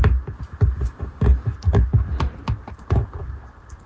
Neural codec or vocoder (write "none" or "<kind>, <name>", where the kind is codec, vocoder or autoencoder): none